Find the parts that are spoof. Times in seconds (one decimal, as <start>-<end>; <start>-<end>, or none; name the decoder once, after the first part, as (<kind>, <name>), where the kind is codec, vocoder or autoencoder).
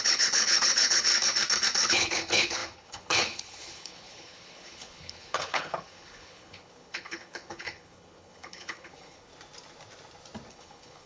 0.0-1.1 (codec, HILCodec); 1.9-9.3; 10.5-11.1